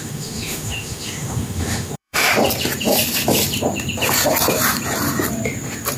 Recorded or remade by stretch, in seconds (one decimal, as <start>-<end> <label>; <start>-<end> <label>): 0.0-2.3 remade; 2.3-6.0 recorded